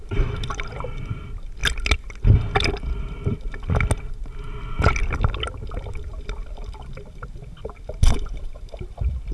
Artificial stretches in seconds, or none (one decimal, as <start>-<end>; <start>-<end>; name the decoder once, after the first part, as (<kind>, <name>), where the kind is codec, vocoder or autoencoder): none